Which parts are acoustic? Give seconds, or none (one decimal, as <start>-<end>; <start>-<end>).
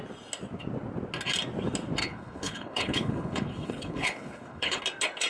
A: 0.0-2.0; 4.8-5.3